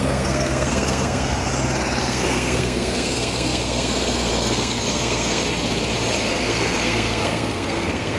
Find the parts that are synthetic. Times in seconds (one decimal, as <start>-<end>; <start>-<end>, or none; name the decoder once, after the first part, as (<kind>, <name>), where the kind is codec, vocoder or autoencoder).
0.0-1.5 (codec, SNAC); 2.0-5.4; 6.3-8.2